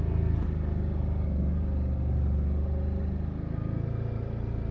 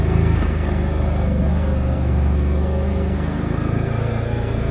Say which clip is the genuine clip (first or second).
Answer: first